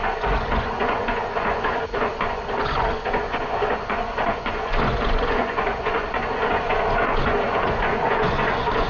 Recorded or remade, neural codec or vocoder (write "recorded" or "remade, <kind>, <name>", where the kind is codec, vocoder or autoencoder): remade, vocoder, Vocos